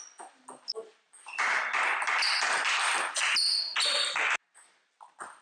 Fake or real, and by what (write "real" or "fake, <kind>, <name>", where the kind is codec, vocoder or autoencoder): real